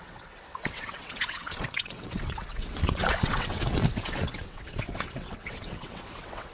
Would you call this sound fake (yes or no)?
yes